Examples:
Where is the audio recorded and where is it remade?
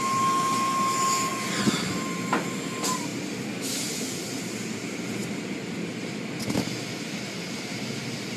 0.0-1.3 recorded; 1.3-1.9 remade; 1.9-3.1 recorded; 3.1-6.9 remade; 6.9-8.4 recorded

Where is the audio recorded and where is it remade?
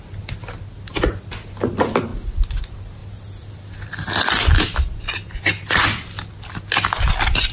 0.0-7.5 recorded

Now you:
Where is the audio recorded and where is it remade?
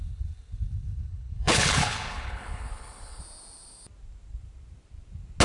0.0-3.2 remade; 3.2-5.4 recorded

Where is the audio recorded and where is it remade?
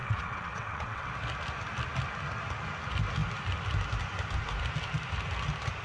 0.0-1.1 remade; 1.1-5.8 recorded